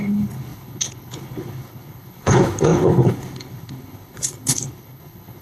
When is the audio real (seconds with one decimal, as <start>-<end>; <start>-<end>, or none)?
none